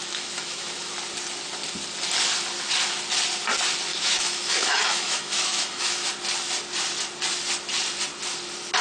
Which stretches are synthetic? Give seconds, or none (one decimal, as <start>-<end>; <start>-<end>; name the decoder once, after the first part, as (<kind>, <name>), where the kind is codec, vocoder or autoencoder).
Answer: 0.0-0.9 (autoencoder, DAC-VAE); 3.9-6.1